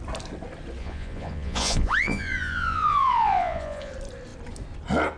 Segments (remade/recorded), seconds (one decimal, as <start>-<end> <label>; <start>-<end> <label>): 0.0-0.8 recorded; 0.8-3.9 remade; 3.9-5.2 recorded